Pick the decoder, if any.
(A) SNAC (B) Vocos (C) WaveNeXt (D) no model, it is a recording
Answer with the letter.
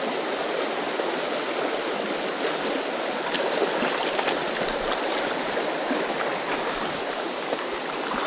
D